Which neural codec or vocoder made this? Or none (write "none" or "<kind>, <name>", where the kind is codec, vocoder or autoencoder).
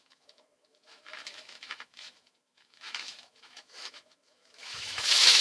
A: autoencoder, DAC-VAE